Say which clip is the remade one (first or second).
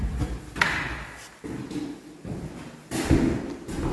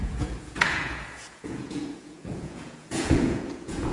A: second